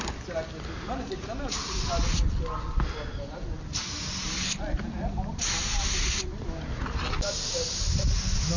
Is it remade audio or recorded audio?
recorded